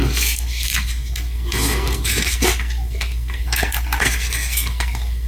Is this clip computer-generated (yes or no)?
yes